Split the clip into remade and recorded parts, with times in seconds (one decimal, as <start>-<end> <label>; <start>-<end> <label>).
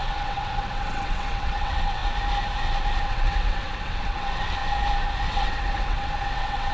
0.0-2.0 remade; 2.0-3.0 recorded; 3.0-4.6 remade; 4.6-5.2 recorded; 5.2-6.7 remade